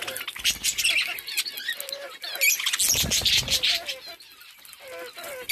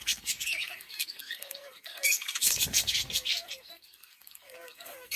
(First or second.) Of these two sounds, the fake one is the second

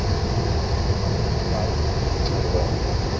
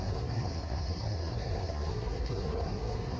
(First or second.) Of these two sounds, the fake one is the second